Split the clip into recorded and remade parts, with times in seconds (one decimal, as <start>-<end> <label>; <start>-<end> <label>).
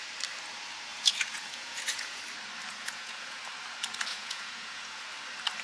0.0-0.9 recorded; 0.9-2.2 remade; 2.2-2.7 recorded; 2.7-3.4 remade; 3.4-4.1 recorded; 4.1-5.0 remade; 5.0-5.6 recorded